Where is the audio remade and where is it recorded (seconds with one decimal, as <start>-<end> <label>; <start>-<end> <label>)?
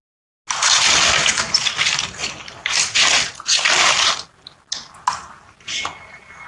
0.0-6.5 recorded